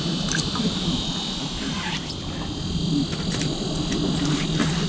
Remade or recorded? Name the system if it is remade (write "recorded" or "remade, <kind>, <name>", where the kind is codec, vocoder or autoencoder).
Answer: remade, vocoder, BigVGAN v2